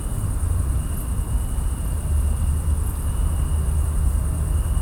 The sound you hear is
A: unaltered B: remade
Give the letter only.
A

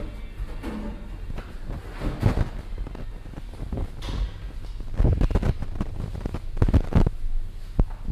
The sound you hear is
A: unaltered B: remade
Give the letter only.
A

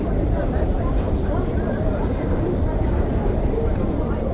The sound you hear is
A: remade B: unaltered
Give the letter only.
A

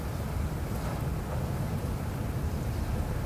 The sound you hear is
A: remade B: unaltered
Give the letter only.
B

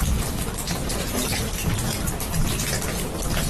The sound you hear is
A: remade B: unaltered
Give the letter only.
B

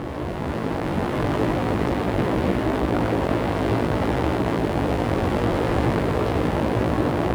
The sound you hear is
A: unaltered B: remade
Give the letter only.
B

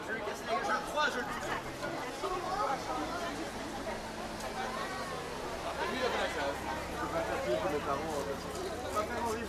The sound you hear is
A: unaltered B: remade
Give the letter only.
A